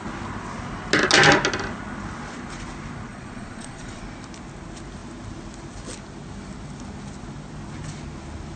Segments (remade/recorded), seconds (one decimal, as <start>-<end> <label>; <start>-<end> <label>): 0.0-3.1 recorded; 3.1-4.0 remade; 4.0-8.6 recorded